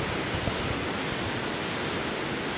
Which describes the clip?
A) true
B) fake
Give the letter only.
A